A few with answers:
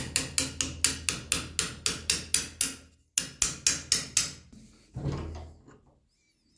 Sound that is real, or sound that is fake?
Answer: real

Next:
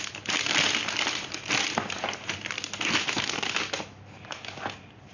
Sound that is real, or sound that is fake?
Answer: real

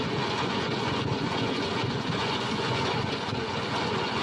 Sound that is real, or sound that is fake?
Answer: fake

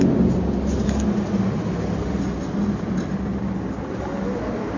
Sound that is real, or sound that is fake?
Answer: real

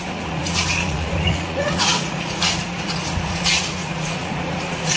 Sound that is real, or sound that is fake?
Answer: fake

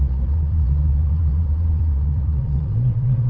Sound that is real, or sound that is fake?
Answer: fake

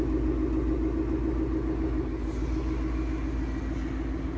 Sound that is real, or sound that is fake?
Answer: real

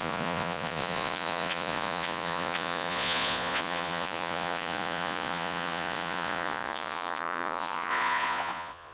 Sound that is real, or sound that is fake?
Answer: fake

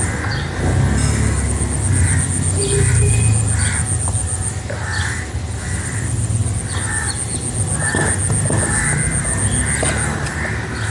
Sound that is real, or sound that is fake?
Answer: real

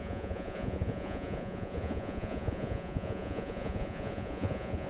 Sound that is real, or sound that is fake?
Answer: fake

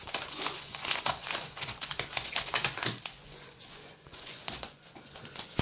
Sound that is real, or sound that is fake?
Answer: fake